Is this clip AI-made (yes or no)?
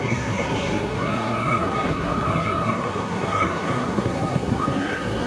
yes